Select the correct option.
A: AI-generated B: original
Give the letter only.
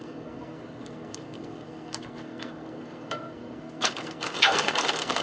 A